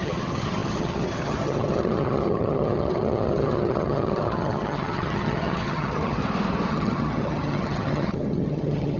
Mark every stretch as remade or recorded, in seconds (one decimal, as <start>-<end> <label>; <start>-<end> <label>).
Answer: 0.0-6.2 remade; 6.2-6.7 recorded; 6.7-9.0 remade